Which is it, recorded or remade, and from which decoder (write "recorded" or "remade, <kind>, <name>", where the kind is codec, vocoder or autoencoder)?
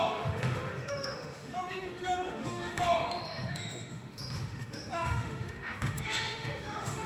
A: remade, autoencoder, DAC-VAE